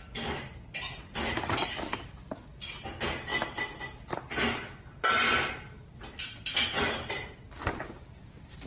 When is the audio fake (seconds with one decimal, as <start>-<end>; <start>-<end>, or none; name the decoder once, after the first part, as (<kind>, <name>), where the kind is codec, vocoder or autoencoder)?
none